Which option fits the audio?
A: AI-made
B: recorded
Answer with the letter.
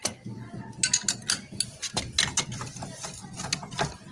B